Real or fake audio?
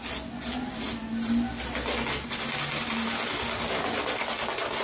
real